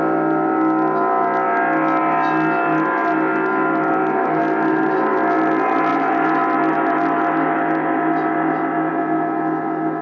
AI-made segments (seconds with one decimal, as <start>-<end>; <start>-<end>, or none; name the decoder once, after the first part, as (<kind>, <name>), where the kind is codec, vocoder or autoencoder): 5.9-8.9 (vocoder, BigVGAN v2)